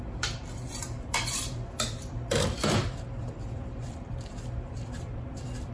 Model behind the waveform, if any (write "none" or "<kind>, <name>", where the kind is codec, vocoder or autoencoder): vocoder, BigVGAN v2